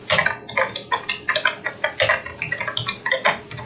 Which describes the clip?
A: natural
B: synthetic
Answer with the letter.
A